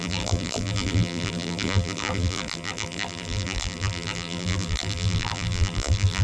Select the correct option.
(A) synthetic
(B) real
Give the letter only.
A